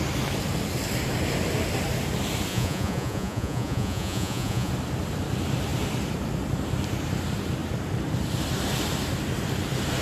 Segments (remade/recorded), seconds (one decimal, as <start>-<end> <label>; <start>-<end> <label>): 0.0-2.5 recorded; 2.5-4.7 remade; 4.7-10.0 recorded